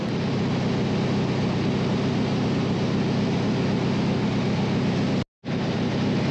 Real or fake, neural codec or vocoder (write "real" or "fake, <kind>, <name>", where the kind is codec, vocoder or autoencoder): real